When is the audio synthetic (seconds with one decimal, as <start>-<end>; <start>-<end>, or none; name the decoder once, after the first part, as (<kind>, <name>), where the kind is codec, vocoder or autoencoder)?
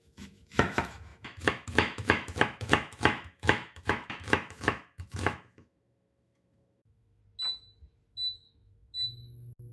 0.0-7.2 (autoencoder, DAC-VAE); 8.1-9.7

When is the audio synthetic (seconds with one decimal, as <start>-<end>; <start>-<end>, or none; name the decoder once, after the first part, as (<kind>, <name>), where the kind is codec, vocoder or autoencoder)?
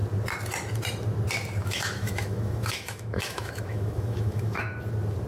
1.6-4.8 (autoencoder, DAC-VAE)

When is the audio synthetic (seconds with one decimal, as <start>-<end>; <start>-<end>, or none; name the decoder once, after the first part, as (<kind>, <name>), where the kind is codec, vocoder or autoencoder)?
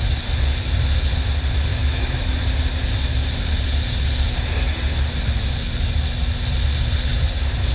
1.7-2.4 (autoencoder, DAC-VAE)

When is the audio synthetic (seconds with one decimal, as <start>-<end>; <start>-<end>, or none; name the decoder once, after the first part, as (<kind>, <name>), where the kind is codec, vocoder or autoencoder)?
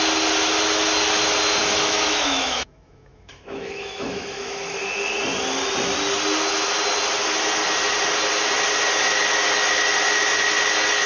1.6-4.8 (autoencoder, DAC-VAE)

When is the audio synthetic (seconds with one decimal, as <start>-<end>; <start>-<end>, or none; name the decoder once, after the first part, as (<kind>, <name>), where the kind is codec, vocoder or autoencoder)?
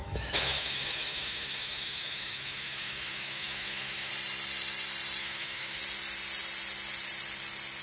0.0-4.1 (autoencoder, DAC-VAE); 5.2-5.8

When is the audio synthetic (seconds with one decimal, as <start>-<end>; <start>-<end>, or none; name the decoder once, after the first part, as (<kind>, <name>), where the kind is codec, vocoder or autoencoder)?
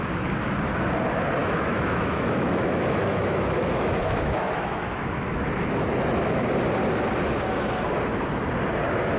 1.4-6.5 (autoencoder, DAC-VAE)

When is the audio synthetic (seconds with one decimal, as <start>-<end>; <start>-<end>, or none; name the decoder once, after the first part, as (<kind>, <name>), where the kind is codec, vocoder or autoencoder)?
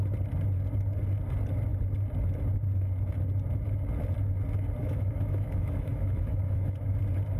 4.8-7.0 (autoencoder, DAC-VAE)